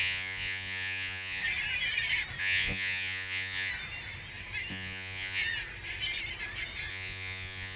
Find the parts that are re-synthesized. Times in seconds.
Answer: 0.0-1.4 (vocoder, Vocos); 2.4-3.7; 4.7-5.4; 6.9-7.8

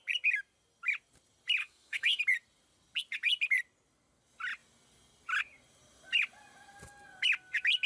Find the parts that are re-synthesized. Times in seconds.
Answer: 1.6-2.2 (codec, SNAC)

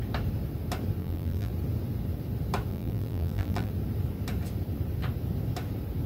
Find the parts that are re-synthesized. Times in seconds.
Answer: 1.0-1.5 (vocoder, BigVGAN v2); 2.7-3.7

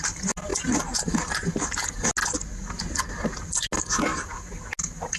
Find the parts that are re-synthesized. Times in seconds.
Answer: none

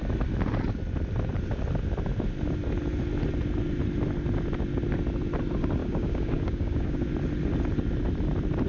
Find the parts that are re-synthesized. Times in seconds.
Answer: 5.8-7.1 (codec, DAC)

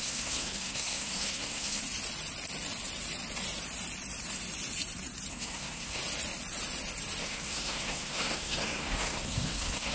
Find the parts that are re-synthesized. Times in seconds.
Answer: 0.0-1.8 (codec, SNAC); 5.3-6.0; 7.2-9.9

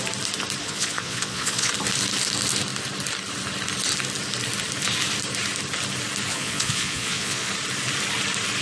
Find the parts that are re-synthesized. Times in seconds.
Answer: 0.6-1.7 (vocoder, Vocos); 6.3-7.5

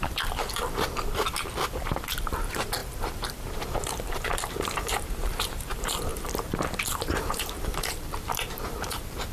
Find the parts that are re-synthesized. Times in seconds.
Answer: 0.0-9.3 (vocoder, BigVGAN v2)